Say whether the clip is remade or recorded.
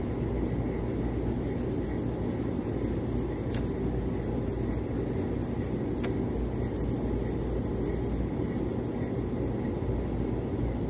recorded